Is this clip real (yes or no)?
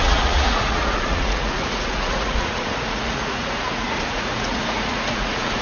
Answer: no